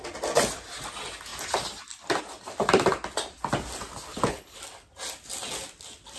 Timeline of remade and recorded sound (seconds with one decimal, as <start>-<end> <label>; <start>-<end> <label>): 0.0-4.1 recorded; 4.1-4.6 remade; 4.6-6.2 recorded

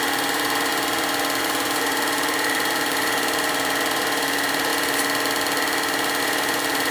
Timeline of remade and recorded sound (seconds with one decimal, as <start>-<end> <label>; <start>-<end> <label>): 0.0-0.7 remade; 0.7-1.4 recorded; 1.4-4.7 remade; 4.7-6.2 recorded; 6.2-6.9 remade

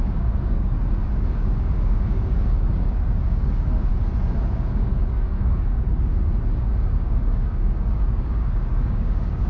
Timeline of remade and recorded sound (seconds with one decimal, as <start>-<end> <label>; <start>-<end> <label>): 0.0-3.9 remade; 3.9-4.5 recorded; 4.5-6.1 remade; 6.1-6.6 recorded; 6.6-9.5 remade

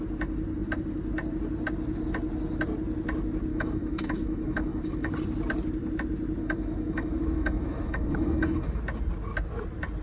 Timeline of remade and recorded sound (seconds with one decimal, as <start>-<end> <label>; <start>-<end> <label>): 0.0-3.5 recorded; 3.5-5.1 remade; 5.1-6.4 recorded; 6.4-8.8 remade; 8.8-10.0 recorded

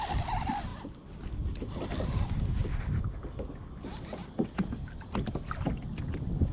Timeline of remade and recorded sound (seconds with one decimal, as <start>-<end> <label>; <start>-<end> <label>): 0.0-6.5 recorded